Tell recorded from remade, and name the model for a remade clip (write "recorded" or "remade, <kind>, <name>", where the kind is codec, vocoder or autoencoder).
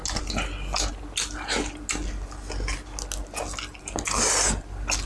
recorded